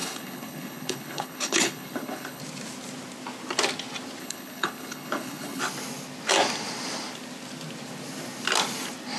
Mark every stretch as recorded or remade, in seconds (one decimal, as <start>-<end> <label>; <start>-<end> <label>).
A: 0.0-2.4 remade; 2.4-4.2 recorded; 4.2-5.6 remade; 5.6-9.2 recorded